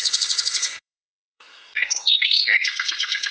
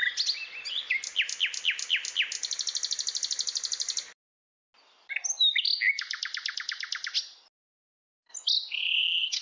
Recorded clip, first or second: second